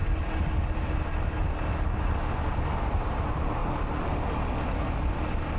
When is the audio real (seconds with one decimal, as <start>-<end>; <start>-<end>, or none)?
0.0-3.0; 3.6-5.6